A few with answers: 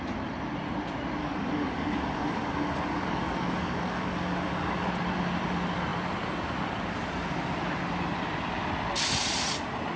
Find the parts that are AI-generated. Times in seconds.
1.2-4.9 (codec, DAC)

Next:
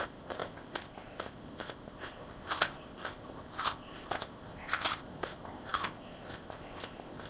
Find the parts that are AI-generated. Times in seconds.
0.0-7.3 (codec, ZipCodec)